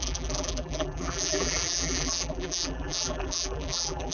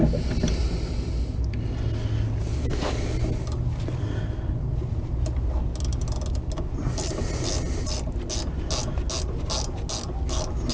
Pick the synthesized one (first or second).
first